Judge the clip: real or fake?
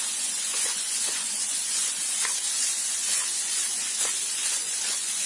fake